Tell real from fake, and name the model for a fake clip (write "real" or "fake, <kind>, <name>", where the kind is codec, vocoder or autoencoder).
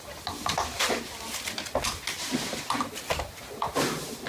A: real